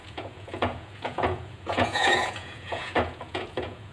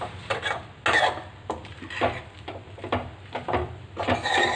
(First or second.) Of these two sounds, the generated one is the first